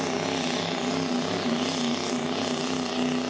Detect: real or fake real